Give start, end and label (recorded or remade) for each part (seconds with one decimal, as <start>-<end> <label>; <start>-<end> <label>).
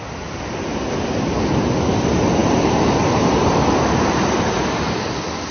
0.0-5.5 recorded